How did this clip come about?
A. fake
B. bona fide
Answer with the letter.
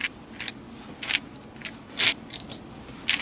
B